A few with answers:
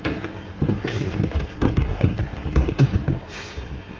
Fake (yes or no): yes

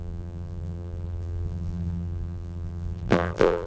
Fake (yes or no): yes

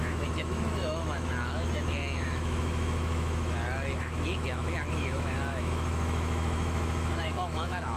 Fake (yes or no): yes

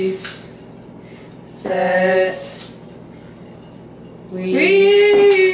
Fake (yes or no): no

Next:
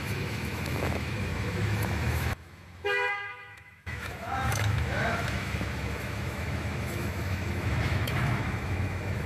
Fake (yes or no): yes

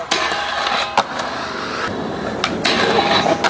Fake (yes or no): no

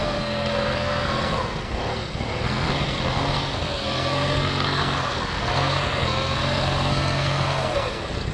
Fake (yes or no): yes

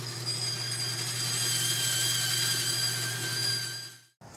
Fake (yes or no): no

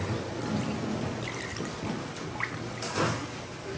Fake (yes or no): no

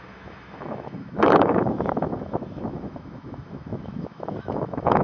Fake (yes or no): yes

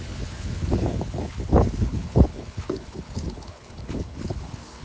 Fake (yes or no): yes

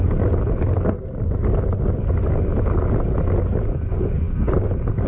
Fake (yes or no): no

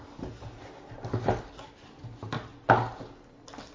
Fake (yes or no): no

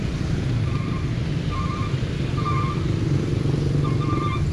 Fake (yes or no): yes